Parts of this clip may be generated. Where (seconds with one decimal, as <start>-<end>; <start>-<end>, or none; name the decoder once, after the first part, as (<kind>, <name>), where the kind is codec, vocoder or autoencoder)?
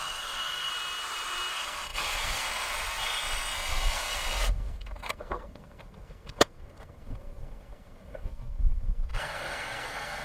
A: 0.0-0.7 (codec, SNAC); 1.5-10.2